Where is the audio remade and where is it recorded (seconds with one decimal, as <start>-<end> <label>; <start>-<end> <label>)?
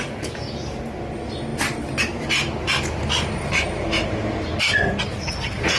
0.0-5.8 recorded